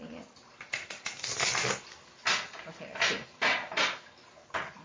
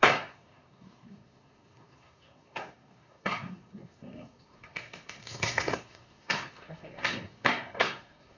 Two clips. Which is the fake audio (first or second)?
second